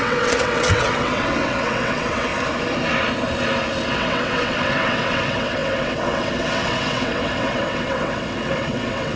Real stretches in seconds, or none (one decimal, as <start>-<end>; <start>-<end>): 2.3-3.9